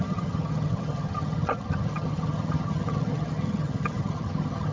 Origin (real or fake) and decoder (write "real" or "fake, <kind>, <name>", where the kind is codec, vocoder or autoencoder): fake, vocoder, HiFi-GAN